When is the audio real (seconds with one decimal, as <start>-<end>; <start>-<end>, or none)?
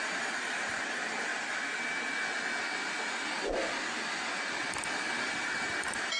1.3-5.0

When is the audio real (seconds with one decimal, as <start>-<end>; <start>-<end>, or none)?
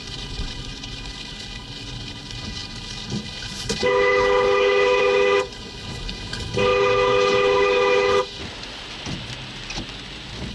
8.4-10.5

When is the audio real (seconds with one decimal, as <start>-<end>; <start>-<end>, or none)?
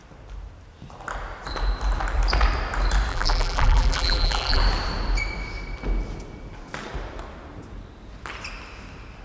0.0-3.1; 4.6-9.2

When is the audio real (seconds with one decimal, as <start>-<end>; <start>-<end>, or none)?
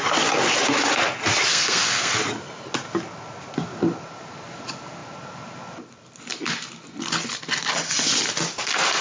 0.0-1.5; 2.1-9.0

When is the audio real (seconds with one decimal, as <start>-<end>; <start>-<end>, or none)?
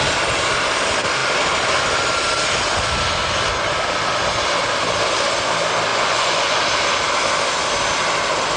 0.0-5.9; 6.6-8.6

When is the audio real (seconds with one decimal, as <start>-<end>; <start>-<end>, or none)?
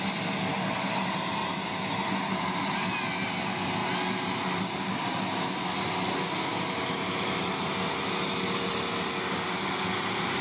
0.0-10.4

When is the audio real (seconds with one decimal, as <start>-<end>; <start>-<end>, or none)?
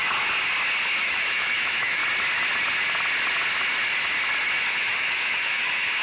0.0-1.0; 2.0-4.7